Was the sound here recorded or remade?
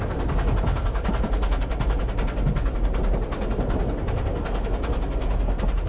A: recorded